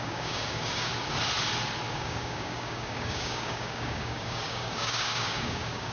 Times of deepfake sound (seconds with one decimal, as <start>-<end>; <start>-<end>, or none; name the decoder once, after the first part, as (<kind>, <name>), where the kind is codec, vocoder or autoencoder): 0.0-0.9 (codec, DAC); 1.9-5.9